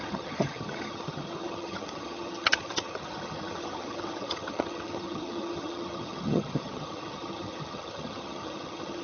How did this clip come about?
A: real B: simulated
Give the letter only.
B